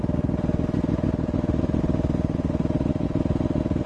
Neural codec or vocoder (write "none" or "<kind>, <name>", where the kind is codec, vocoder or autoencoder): none